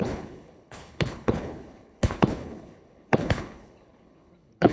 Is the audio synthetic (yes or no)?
yes